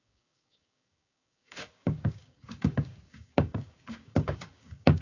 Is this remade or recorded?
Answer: remade